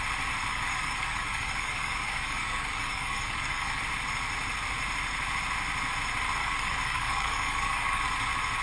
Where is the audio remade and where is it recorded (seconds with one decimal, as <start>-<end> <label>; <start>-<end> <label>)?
0.0-0.5 recorded; 0.5-3.8 remade; 3.8-6.4 recorded; 6.4-8.0 remade; 8.0-8.6 recorded